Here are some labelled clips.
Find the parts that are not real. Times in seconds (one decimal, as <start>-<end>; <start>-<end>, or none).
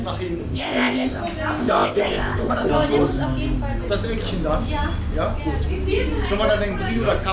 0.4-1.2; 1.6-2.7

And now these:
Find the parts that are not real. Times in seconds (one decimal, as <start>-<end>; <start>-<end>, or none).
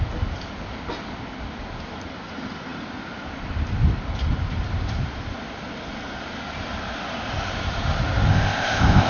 8.3-9.1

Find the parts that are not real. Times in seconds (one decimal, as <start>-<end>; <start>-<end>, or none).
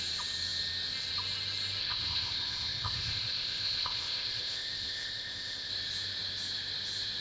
1.8-5.7